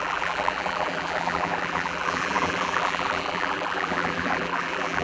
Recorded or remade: remade